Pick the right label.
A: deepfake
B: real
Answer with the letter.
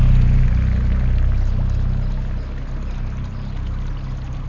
B